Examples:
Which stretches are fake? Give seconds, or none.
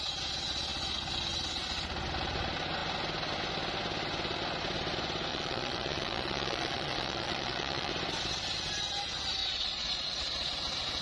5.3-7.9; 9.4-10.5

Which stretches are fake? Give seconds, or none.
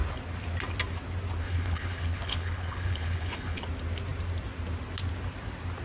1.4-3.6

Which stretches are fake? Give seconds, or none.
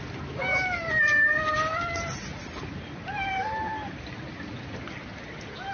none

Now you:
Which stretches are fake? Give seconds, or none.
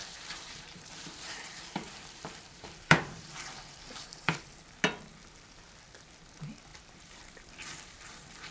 0.0-4.4; 6.7-8.5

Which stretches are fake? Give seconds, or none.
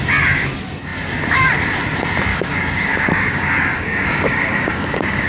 2.3-5.3